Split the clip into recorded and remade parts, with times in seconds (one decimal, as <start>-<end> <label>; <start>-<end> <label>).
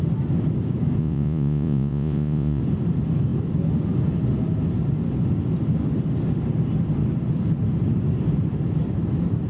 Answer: 0.0-1.0 recorded; 1.0-2.6 remade; 2.6-9.5 recorded